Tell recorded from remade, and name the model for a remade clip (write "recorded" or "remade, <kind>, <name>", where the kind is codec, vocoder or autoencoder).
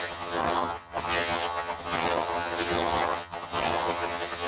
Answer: remade, vocoder, HiFi-GAN